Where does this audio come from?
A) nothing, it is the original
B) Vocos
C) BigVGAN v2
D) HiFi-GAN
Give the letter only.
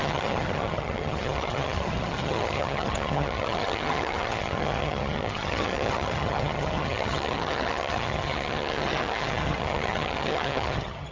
D